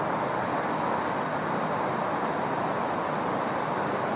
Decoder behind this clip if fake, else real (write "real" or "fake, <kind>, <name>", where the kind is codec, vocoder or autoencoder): real